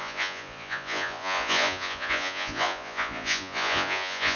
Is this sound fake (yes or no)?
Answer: yes